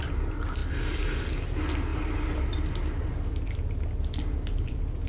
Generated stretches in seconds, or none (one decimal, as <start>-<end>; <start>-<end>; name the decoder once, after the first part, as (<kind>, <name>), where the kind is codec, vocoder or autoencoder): 1.9-5.1 (vocoder, BigVGAN v2)